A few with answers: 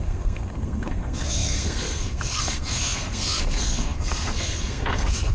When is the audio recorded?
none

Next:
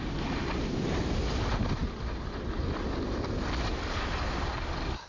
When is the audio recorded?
0.0-5.1